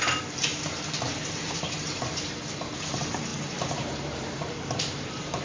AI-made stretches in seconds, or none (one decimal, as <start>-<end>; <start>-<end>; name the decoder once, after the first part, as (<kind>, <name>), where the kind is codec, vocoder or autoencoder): 0.0-5.4 (vocoder, BigVGAN v2)